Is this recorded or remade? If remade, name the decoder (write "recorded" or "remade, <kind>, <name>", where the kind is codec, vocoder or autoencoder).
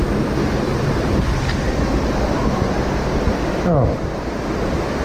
recorded